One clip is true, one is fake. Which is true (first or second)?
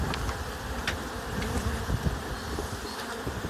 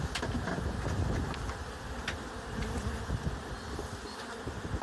second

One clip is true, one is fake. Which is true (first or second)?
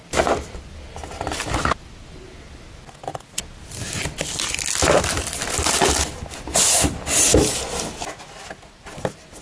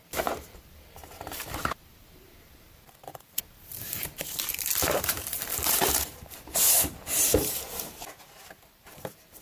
first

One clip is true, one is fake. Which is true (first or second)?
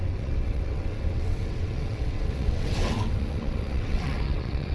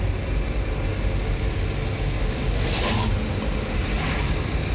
second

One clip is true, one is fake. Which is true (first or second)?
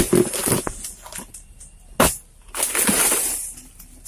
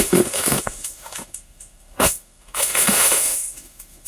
first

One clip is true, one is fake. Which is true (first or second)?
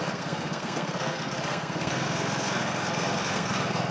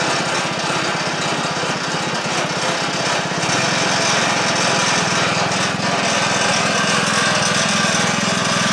second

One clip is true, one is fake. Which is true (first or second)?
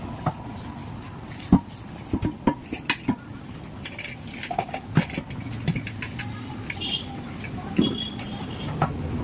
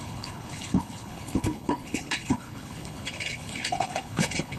first